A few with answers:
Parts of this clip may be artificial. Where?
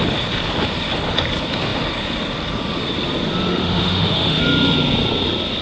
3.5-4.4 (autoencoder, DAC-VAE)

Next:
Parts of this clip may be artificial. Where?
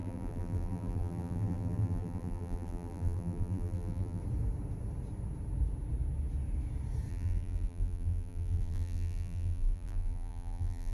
0.0-4.2 (vocoder, BigVGAN v2); 7.1-10.9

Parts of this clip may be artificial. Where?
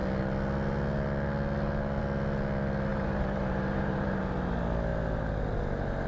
2.9-4.2 (vocoder, BigVGAN v2)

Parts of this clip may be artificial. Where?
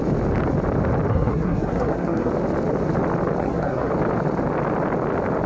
1.1-2.3 (codec, SNAC); 3.4-3.9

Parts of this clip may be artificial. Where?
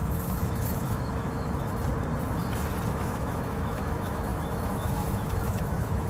0.0-1.7 (autoencoder, DAC-VAE); 2.9-6.1